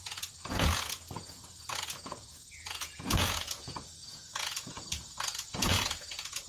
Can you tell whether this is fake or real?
fake